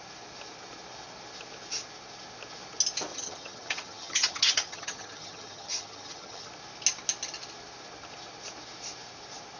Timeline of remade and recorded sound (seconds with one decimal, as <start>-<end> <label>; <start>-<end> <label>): 0.0-3.1 recorded; 3.1-6.5 remade; 6.5-9.6 recorded